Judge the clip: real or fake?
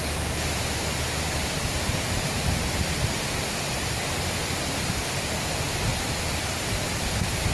fake